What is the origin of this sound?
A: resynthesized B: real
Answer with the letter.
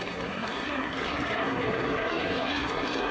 A